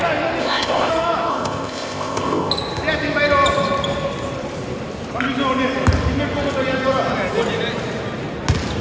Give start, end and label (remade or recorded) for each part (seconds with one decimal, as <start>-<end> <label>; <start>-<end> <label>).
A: 0.0-0.4 recorded; 0.4-0.9 remade; 0.9-1.3 recorded; 1.3-2.5 remade; 2.5-8.8 recorded